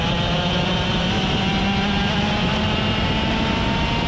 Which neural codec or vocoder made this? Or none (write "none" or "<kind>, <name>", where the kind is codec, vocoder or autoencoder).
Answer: none